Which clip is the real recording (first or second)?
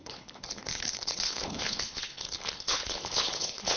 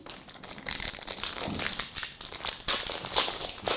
second